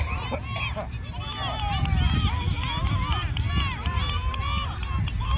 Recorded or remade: recorded